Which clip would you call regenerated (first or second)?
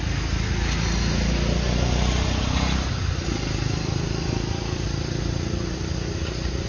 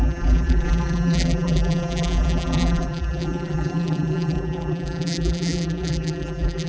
second